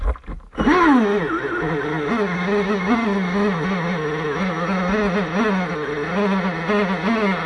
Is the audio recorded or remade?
recorded